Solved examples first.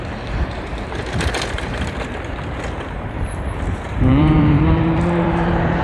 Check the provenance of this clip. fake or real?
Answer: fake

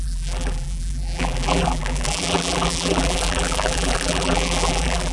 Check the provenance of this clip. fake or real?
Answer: fake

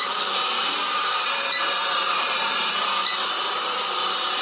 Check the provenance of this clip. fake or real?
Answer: fake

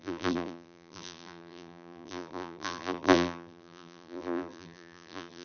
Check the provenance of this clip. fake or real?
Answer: fake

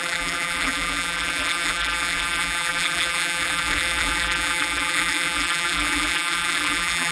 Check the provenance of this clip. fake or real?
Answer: fake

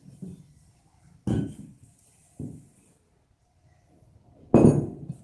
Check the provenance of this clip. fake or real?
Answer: real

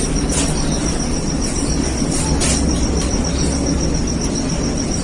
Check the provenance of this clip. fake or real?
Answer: real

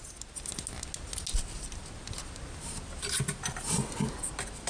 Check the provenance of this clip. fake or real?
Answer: real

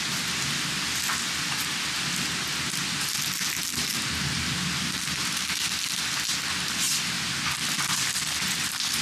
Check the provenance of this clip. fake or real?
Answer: real